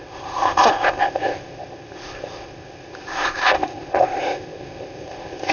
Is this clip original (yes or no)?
no